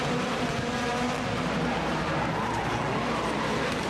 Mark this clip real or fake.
real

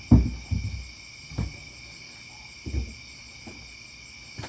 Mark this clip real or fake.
real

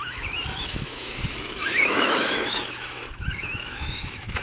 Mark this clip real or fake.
fake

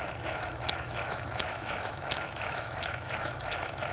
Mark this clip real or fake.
fake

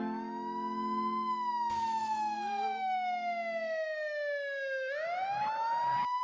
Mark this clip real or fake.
fake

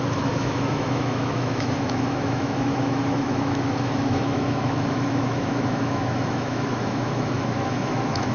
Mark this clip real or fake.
fake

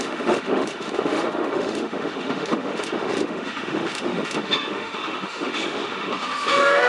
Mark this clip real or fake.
fake